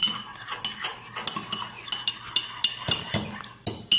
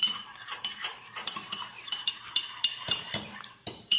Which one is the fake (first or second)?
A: second